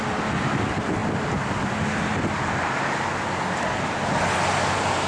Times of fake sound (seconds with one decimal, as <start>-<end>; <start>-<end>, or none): none